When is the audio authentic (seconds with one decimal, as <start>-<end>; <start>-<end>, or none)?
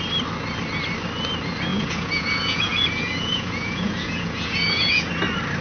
0.0-1.7; 5.1-5.6